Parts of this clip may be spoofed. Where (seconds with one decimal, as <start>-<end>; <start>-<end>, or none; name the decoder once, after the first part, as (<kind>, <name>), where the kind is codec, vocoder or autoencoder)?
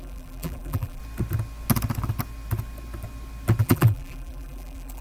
0.0-1.0 (vocoder, BigVGAN v2); 3.6-5.0